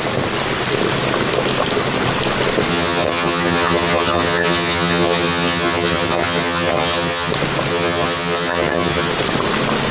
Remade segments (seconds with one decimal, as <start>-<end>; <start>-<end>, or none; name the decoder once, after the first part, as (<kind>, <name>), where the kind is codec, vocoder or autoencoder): 2.7-7.3 (vocoder, HiFi-GAN); 7.7-9.1